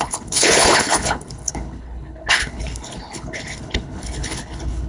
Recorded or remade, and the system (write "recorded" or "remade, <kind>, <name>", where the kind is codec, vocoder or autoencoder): remade, codec, HILCodec